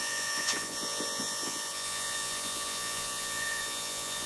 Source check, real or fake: fake